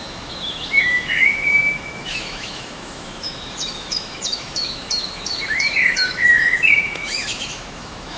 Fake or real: fake